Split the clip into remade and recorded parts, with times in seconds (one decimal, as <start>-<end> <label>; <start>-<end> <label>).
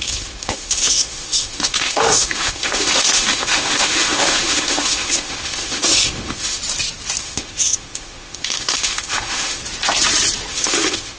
0.0-6.6 remade; 6.6-7.2 recorded; 7.2-9.6 remade; 9.6-10.5 recorded; 10.5-11.2 remade